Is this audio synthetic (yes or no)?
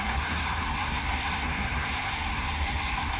yes